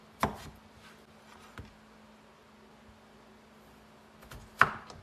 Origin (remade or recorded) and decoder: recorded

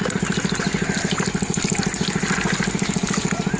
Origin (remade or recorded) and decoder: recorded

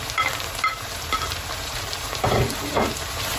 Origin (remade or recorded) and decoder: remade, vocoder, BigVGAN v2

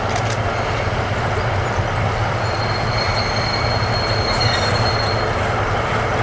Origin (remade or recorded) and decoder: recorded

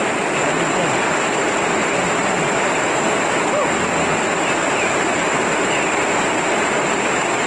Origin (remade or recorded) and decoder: recorded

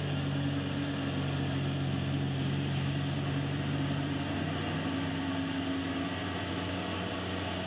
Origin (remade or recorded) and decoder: recorded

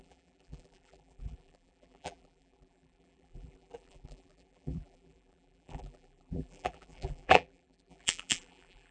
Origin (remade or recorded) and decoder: remade, vocoder, BigVGAN v2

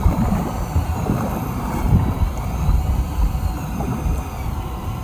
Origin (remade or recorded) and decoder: remade, vocoder, BigVGAN v2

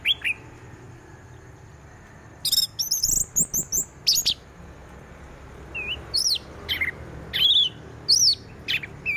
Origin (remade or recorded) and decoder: recorded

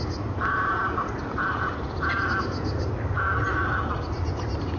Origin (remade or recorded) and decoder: recorded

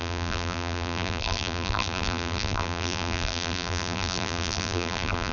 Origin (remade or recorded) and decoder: remade, vocoder, BigVGAN v2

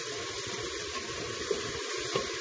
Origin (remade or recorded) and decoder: remade, vocoder, BigVGAN v2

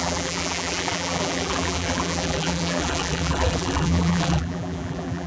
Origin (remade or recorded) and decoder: remade, vocoder, BigVGAN v2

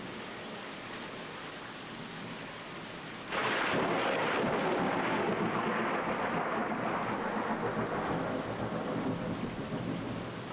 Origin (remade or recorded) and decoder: recorded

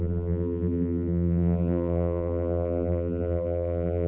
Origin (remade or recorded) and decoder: remade, vocoder, BigVGAN v2